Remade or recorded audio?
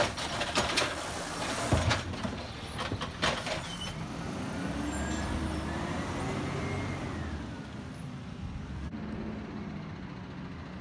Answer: recorded